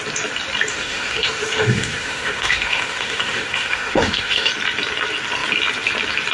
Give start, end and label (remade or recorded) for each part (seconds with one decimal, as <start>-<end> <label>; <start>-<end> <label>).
0.0-0.7 recorded; 0.7-4.5 remade; 4.5-6.3 recorded